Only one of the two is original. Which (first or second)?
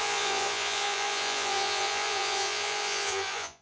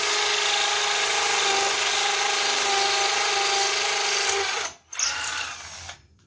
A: second